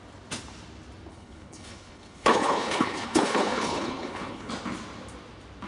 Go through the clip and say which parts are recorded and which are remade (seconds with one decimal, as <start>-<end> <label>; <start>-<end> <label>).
0.0-1.1 recorded; 1.1-4.5 remade; 4.5-5.7 recorded